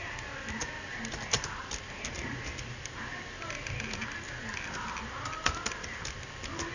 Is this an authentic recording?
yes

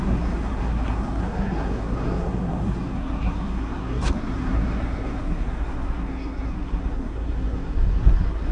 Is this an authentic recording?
no